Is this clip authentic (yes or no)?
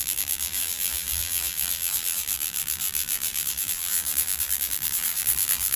no